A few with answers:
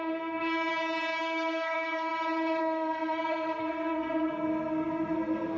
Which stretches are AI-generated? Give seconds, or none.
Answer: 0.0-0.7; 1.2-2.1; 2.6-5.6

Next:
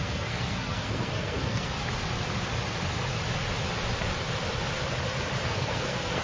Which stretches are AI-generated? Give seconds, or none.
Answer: 0.0-1.7; 5.4-6.2

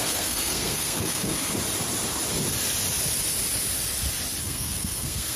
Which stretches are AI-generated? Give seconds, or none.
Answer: 0.0-1.5; 4.4-5.4

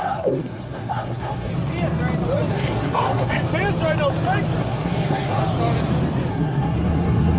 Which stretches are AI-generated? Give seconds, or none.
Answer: 0.0-1.5; 2.5-3.4; 4.6-5.4; 6.3-7.4